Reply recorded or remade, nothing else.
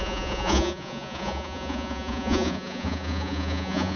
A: remade